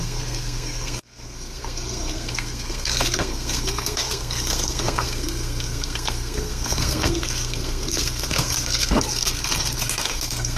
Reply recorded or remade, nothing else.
remade